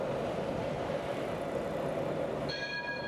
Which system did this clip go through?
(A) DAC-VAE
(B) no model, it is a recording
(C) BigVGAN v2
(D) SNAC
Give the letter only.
B